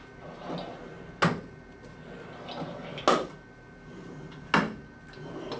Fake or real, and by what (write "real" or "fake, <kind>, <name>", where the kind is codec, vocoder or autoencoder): real